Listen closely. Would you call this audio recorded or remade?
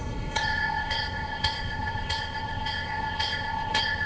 remade